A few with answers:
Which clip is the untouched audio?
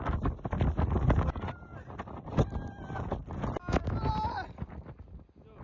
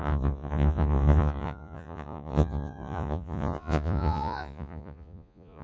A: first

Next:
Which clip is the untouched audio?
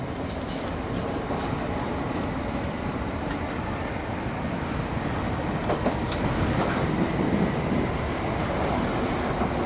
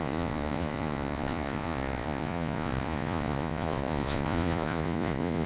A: first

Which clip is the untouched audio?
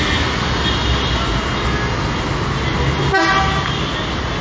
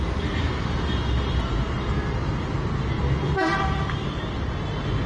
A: first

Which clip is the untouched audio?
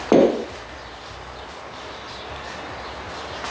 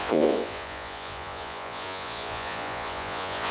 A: first